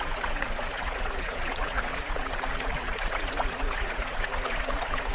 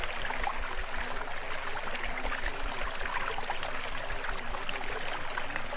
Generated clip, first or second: first